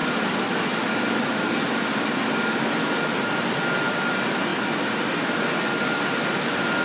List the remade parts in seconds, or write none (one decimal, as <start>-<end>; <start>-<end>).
none